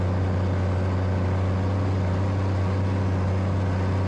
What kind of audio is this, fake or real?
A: real